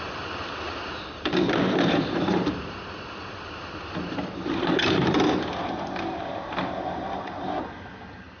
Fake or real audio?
fake